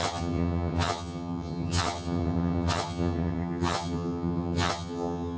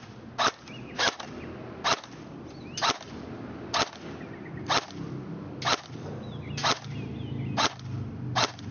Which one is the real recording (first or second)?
second